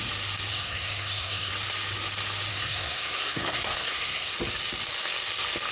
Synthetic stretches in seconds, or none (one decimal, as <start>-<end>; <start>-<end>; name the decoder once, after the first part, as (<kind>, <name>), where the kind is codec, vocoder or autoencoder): 0.5-1.5 (codec, SNAC); 2.5-4.3